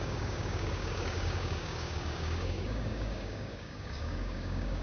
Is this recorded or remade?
remade